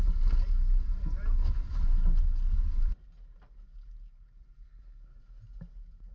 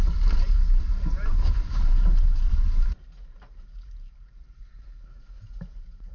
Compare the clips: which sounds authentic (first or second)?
first